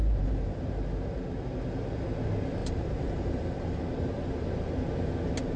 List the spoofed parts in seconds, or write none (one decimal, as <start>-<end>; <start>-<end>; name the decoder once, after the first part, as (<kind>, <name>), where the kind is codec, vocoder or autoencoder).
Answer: 0.0-0.6 (vocoder, BigVGAN v2); 2.6-3.8